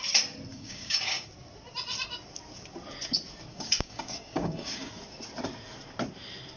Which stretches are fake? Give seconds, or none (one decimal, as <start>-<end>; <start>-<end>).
0.5-1.3; 3.5-4.9